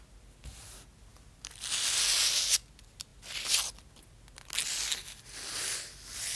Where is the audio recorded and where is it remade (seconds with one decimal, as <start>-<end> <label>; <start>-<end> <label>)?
0.0-6.3 recorded